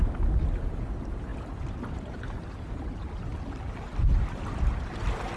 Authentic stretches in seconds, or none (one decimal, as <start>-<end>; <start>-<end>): 0.0-5.4